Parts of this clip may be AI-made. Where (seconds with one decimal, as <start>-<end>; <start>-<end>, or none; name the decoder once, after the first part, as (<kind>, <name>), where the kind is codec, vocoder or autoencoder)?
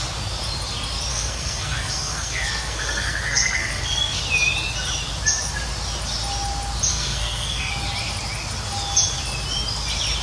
1.1-4.2 (codec, SNAC); 6.9-7.7